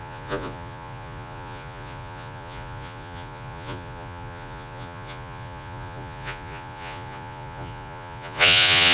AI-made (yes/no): yes